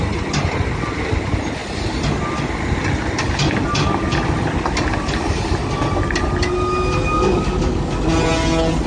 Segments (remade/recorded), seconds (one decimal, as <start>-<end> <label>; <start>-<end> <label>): 0.0-7.1 recorded; 7.1-8.0 remade; 8.0-8.9 recorded